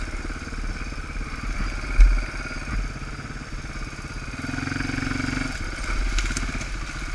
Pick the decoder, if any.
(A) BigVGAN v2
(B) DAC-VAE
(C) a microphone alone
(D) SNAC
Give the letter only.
C